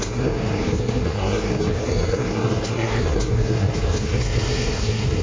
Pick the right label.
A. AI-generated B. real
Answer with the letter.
A